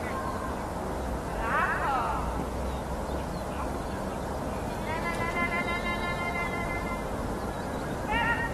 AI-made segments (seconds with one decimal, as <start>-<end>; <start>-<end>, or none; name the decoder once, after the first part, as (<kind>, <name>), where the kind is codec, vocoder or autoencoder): 1.3-2.0 (vocoder, BigVGAN v2)